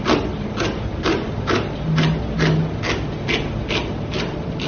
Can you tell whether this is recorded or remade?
recorded